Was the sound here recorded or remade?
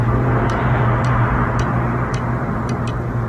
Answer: remade